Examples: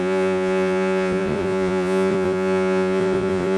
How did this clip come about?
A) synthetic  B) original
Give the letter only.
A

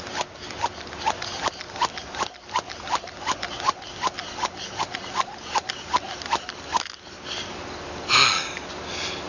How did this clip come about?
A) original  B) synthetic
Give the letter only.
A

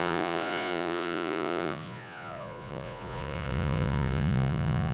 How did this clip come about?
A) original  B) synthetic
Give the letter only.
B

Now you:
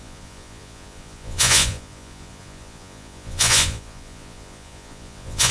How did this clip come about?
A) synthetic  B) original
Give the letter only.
A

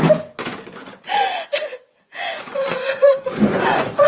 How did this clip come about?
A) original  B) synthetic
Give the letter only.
B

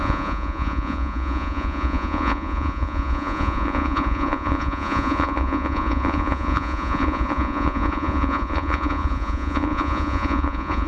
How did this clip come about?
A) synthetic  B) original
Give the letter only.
A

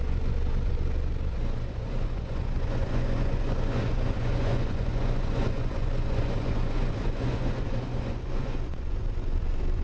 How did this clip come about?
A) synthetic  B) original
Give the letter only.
A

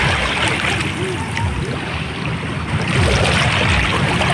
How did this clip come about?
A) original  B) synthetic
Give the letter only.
A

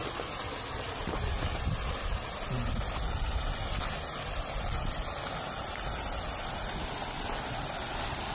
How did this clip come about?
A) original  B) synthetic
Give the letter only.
A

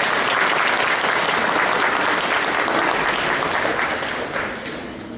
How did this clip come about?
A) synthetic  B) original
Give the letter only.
B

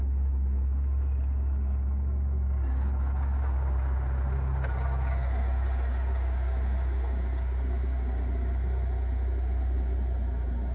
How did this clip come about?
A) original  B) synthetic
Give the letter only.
A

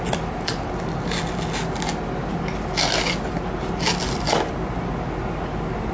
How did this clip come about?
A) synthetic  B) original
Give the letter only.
B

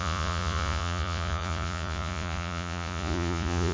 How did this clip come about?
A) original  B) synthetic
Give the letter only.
B